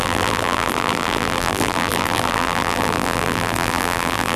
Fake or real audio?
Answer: fake